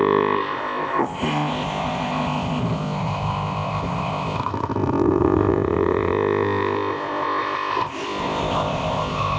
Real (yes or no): no